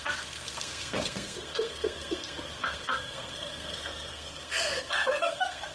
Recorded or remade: remade